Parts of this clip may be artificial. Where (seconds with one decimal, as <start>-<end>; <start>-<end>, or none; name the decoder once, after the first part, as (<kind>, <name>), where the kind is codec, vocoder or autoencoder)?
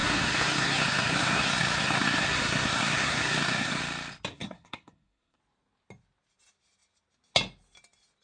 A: 0.0-3.8 (codec, SNAC); 4.3-5.4